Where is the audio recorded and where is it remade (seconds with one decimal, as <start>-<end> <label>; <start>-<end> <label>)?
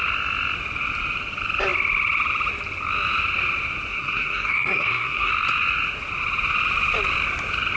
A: 0.0-3.9 recorded; 3.9-5.3 remade; 5.3-7.8 recorded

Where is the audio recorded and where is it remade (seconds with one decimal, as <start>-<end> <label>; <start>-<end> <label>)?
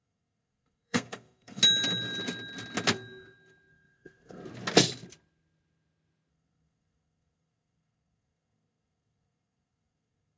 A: 0.0-1.6 remade; 1.6-3.7 recorded; 3.7-4.4 remade; 4.4-6.3 recorded; 6.3-10.4 remade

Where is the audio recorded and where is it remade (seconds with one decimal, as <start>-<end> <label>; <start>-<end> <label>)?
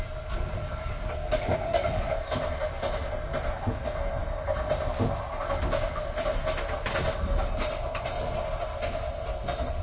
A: 0.0-0.6 recorded; 0.6-2.1 remade; 2.1-9.8 recorded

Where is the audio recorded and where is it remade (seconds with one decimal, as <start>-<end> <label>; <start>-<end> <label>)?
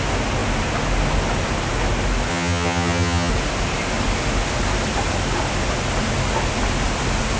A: 0.0-2.3 recorded; 2.3-3.3 remade; 3.3-7.4 recorded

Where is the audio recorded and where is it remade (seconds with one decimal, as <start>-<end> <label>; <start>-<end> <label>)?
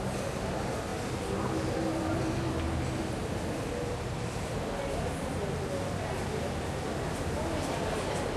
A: 0.0-8.4 recorded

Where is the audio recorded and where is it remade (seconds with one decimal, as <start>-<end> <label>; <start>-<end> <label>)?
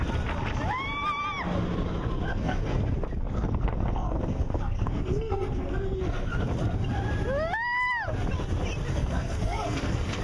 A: 0.0-2.3 recorded; 2.3-2.8 remade; 2.8-3.2 recorded; 3.2-6.3 remade; 6.3-8.9 recorded; 8.9-10.2 remade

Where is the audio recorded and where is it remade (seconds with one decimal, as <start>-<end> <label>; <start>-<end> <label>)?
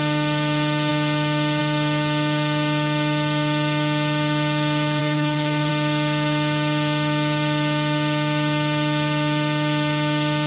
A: 0.0-5.0 recorded; 5.0-5.7 remade; 5.7-10.5 recorded